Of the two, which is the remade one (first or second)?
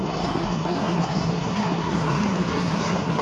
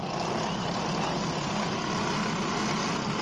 first